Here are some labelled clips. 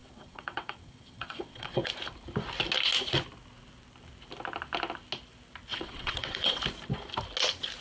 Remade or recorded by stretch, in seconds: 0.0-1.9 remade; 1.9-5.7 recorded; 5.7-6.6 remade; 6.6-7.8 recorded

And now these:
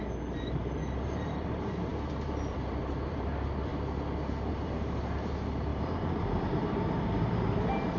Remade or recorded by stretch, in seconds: 0.0-3.7 remade; 3.7-4.5 recorded; 4.5-8.0 remade

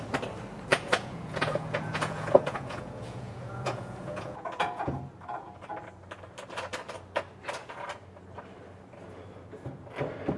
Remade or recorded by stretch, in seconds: 0.0-0.7 recorded; 0.7-5.0 remade; 5.0-10.4 recorded

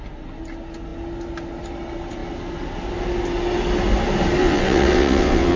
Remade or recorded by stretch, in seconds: 0.0-4.4 recorded; 4.4-5.6 remade

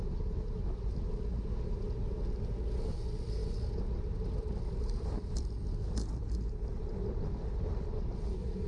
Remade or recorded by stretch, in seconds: 0.0-8.7 recorded